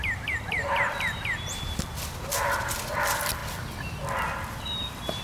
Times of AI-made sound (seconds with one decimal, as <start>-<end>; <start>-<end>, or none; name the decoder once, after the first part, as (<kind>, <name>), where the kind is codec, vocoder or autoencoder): 0.0-3.4 (vocoder, BigVGAN v2); 4.6-5.2